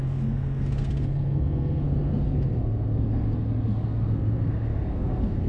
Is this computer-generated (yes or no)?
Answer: yes